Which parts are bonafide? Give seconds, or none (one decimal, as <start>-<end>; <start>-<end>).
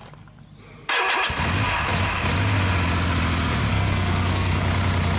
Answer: 0.0-3.7; 4.6-5.2